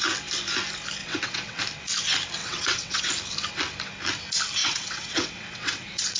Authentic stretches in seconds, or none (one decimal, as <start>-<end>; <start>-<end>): 0.0-1.0; 1.6-2.4; 3.0-4.6